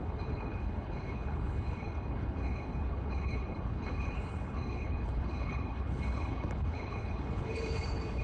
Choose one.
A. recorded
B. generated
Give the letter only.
B